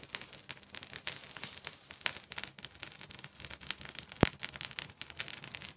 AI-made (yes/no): no